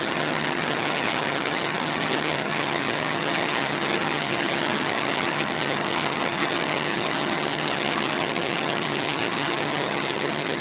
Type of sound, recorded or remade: remade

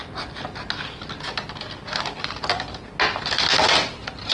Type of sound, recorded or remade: recorded